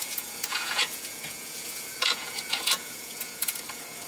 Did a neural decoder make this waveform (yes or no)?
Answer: yes